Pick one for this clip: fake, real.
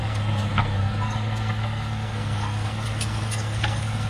fake